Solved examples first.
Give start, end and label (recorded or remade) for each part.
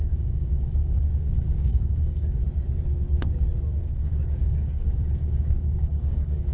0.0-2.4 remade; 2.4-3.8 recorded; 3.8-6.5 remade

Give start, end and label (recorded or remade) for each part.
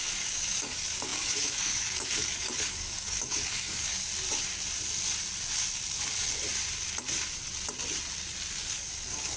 0.0-4.1 remade; 4.1-8.5 recorded; 8.5-9.4 remade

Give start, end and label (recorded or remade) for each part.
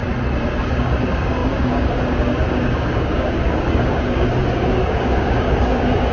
0.0-0.6 recorded; 0.6-6.1 remade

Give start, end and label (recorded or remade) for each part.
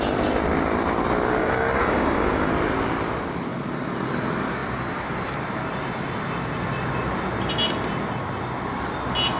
0.0-1.4 recorded; 1.4-2.5 remade; 2.5-9.4 recorded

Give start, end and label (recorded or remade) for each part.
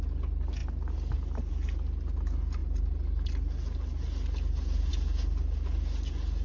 0.0-6.4 recorded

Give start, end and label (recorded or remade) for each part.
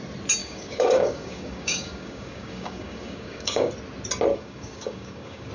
0.0-0.4 recorded; 0.4-3.7 remade; 3.7-4.3 recorded; 4.3-5.5 remade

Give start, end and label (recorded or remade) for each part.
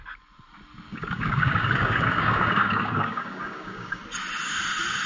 0.0-0.9 recorded; 0.9-4.0 remade; 4.0-5.1 recorded